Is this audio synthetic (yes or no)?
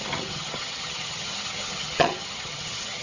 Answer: yes